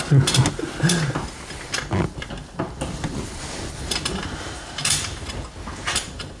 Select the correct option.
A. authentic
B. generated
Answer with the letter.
A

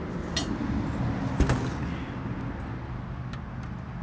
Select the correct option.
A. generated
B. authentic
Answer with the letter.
B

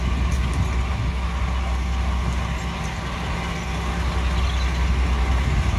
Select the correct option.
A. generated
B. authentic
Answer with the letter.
B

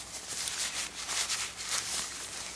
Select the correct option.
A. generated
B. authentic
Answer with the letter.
A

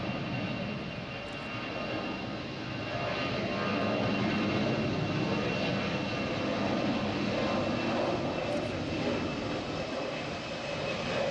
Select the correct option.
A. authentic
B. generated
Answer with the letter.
A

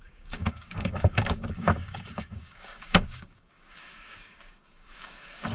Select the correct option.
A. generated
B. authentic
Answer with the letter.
A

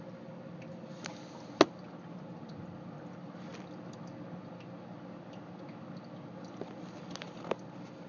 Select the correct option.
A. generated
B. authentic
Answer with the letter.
B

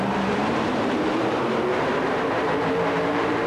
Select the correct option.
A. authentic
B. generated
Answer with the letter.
B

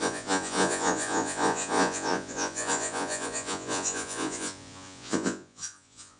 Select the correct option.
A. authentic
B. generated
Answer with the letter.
B